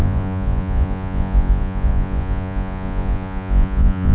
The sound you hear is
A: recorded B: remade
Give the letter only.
B